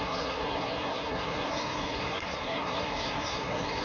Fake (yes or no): yes